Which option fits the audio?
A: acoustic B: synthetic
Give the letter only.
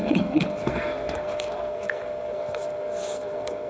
B